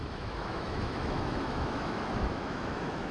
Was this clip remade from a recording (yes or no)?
yes